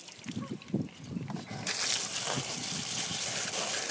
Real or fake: real